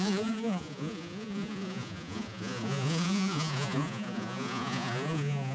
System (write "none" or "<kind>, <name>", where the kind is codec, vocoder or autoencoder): vocoder, Vocos